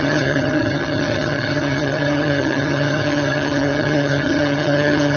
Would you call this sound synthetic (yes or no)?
yes